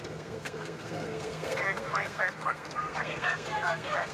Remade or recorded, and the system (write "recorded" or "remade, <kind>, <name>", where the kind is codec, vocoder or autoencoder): remade, codec, SNAC